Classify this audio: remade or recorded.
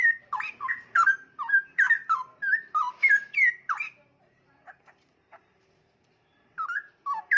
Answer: remade